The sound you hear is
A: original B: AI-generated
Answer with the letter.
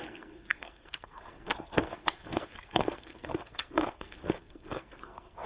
B